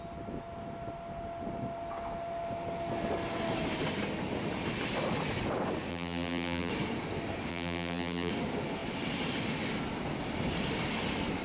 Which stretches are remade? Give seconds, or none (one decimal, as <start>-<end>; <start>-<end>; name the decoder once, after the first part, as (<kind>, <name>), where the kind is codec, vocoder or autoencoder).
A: 5.9-6.7 (vocoder, BigVGAN v2); 7.5-8.3